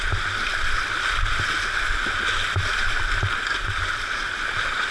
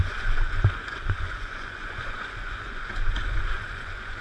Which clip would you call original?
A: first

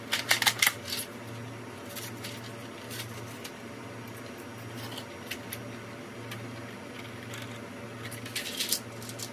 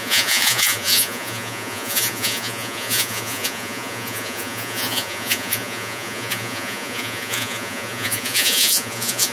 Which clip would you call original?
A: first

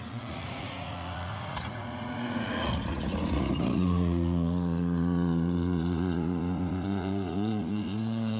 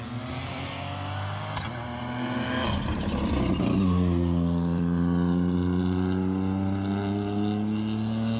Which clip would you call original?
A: second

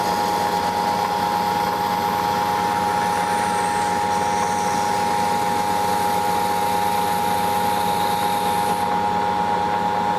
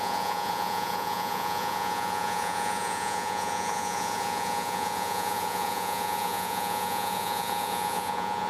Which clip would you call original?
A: first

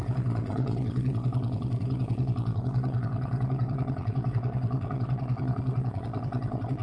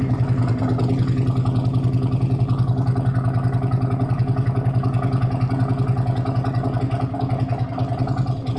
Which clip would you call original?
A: second